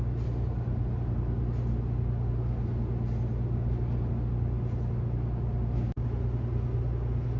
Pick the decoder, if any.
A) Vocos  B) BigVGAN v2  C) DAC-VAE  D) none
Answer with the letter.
D